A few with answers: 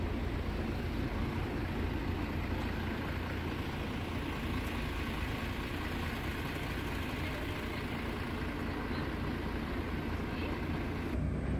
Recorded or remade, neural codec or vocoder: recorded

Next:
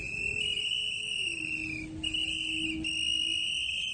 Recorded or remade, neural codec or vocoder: recorded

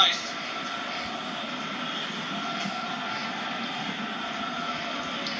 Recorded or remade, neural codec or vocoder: recorded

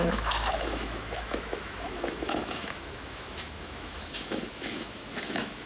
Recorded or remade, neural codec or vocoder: remade, autoencoder, DAC-VAE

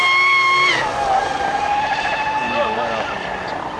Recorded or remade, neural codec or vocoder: recorded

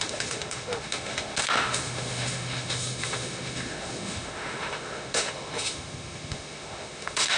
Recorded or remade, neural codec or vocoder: remade, autoencoder, DAC-VAE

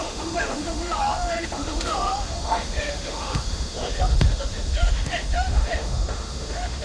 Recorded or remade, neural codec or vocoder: remade, autoencoder, DAC-VAE